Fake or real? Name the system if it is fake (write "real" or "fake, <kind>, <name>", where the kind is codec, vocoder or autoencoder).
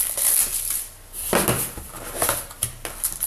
real